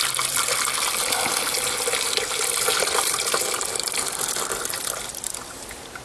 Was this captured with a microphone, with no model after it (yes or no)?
yes